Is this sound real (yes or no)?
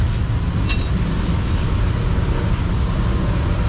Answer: yes